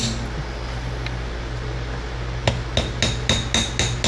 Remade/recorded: recorded